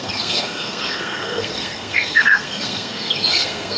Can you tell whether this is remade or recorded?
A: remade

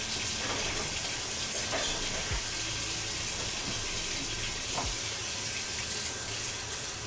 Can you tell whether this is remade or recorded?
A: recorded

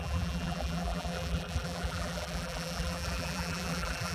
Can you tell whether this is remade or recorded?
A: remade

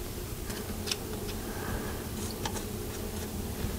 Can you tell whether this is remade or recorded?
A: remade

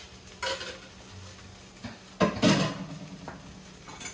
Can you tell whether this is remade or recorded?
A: recorded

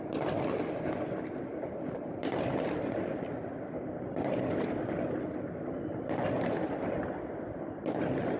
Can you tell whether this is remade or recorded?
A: recorded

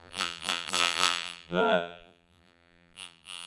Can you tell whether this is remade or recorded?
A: remade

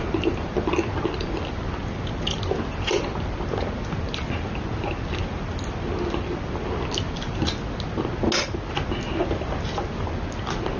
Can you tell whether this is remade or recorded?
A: recorded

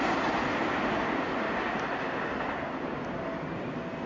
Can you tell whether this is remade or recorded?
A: recorded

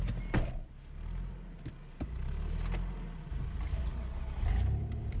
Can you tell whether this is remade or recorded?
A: recorded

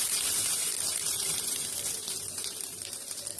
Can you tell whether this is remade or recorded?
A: remade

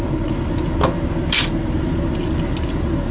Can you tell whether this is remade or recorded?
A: recorded